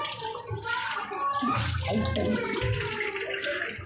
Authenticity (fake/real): real